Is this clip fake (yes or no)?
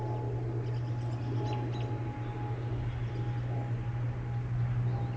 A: no